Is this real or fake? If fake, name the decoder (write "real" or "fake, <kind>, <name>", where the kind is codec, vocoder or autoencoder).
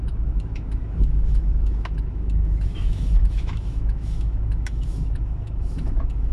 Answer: fake, autoencoder, DAC-VAE